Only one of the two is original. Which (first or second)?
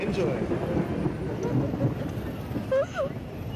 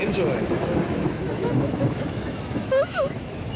first